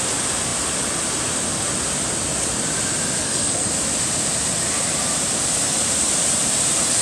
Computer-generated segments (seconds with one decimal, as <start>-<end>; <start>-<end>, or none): 3.2-3.7